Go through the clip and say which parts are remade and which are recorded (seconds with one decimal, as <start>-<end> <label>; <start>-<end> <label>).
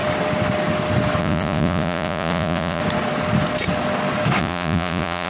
0.0-1.2 recorded; 1.2-2.8 remade; 2.8-4.4 recorded; 4.4-5.3 remade